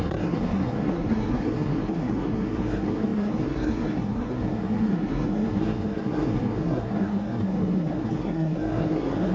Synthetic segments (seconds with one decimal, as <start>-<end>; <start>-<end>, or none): 0.0-9.3